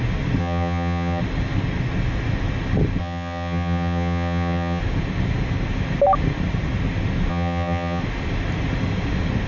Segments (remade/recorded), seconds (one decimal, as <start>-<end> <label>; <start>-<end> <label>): 0.0-0.4 recorded; 0.4-1.2 remade; 1.2-3.0 recorded; 3.0-4.8 remade; 4.8-7.3 recorded; 7.3-8.0 remade; 8.0-9.5 recorded